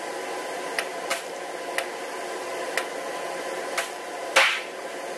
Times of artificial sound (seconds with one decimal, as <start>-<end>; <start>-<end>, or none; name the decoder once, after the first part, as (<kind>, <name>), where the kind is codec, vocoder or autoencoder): none